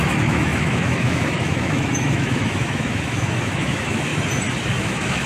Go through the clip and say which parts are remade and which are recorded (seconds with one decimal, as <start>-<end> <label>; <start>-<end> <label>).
0.0-4.1 remade; 4.1-4.8 recorded; 4.8-5.3 remade